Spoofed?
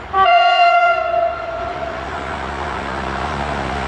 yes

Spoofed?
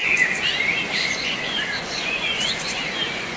yes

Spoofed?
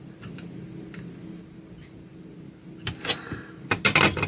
no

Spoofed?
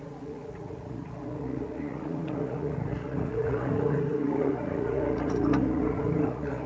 yes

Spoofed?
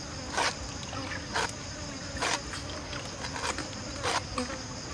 no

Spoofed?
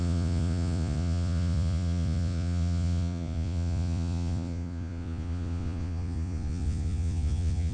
yes